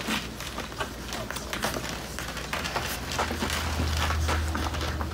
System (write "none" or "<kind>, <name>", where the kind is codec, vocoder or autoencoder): none